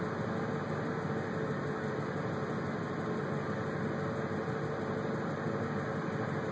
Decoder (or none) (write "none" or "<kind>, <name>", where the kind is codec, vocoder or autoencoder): none